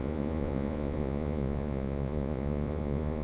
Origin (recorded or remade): remade